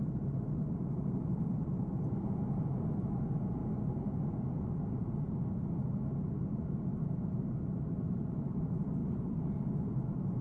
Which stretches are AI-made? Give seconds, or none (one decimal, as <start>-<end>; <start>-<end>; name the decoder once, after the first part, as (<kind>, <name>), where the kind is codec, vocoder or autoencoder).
9.0-9.7 (vocoder, BigVGAN v2)